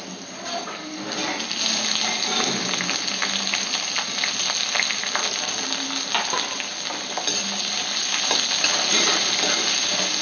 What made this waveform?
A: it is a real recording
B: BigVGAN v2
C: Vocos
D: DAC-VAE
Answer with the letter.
A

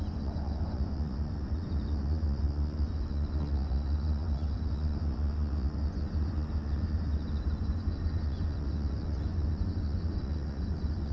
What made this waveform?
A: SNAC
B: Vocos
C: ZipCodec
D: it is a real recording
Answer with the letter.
B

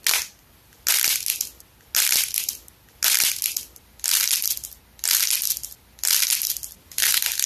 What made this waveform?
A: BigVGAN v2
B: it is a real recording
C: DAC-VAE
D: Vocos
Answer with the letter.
B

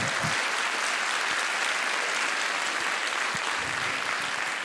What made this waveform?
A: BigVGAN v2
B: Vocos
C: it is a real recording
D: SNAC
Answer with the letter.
C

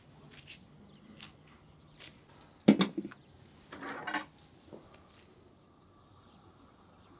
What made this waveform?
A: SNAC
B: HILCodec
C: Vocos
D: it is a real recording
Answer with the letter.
D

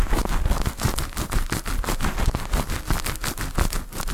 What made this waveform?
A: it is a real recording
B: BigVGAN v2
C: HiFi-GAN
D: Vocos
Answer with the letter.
A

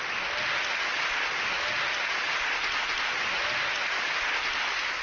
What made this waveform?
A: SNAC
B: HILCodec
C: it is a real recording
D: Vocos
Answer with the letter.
C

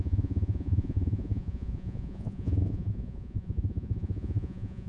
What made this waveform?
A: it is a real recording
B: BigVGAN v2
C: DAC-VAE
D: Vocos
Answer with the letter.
D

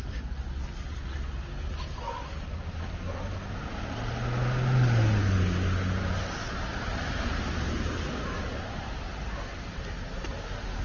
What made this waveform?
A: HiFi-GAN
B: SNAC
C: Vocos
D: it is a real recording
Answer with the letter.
D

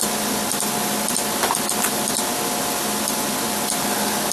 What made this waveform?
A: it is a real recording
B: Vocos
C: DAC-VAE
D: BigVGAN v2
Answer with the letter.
A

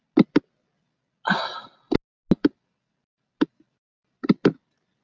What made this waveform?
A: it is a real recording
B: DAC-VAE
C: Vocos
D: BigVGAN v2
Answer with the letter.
A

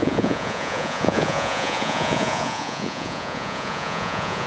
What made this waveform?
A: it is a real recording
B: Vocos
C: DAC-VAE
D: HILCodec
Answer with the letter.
B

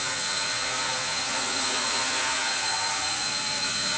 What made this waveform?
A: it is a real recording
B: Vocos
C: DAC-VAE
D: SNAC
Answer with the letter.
B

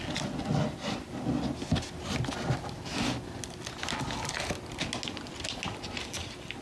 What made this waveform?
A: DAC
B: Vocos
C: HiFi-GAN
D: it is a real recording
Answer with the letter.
D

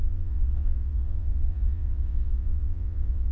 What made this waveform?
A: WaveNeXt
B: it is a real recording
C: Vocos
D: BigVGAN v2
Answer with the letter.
C